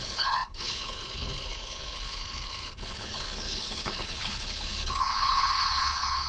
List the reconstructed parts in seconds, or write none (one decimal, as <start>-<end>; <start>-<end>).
0.0-6.3